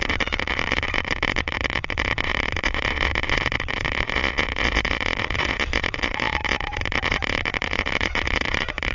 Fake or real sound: fake